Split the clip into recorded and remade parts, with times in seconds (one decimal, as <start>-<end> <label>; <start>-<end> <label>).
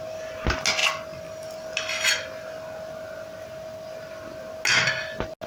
0.0-5.5 recorded